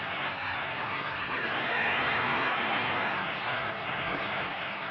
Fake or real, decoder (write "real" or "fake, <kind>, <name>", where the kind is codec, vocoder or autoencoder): fake, codec, SNAC